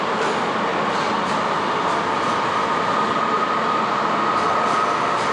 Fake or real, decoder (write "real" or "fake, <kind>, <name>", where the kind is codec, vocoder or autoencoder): real